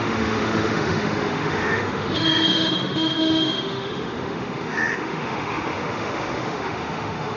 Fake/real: fake